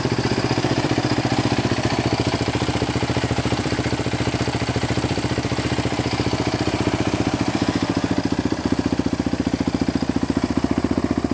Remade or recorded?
remade